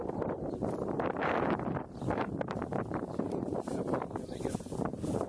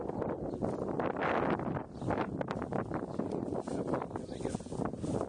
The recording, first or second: second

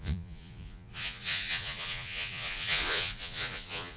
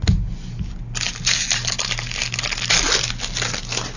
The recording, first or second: second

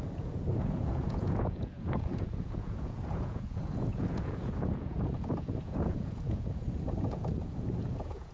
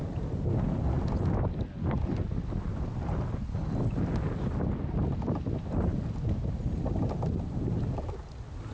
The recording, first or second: second